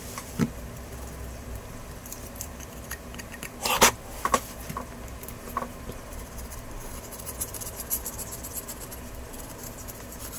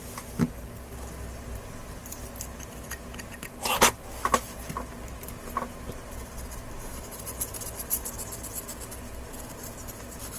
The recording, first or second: second